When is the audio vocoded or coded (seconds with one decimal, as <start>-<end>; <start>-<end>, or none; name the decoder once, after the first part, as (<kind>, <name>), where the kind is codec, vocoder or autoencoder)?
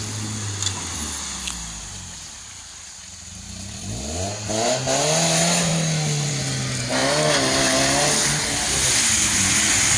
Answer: none